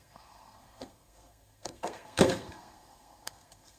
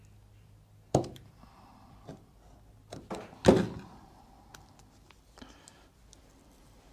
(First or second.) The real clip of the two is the second